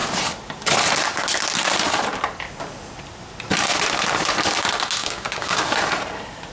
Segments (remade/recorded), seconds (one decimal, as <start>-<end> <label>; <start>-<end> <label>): 0.0-5.0 recorded; 5.0-5.6 remade; 5.6-6.5 recorded